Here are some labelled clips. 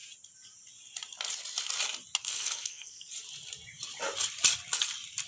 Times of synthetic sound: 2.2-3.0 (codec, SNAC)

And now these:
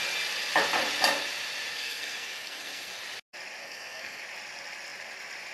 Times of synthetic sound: 1.7-2.9 (codec, SNAC); 3.6-4.2

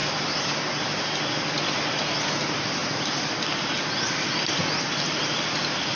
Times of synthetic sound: none

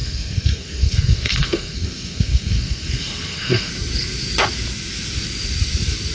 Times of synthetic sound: 0.0-3.7 (codec, SNAC)

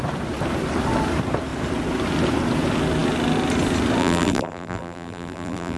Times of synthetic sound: 4.0-5.8 (vocoder, BigVGAN v2)

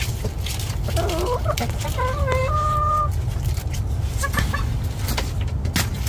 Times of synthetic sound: none

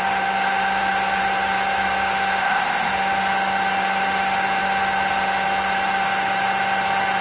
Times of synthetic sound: 2.4-2.9 (codec, ZipCodec)

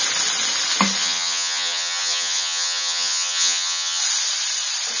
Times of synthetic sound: 1.0-4.0 (vocoder, HiFi-GAN)